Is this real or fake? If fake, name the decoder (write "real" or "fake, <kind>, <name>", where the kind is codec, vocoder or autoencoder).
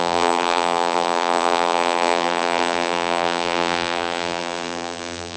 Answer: fake, vocoder, BigVGAN v2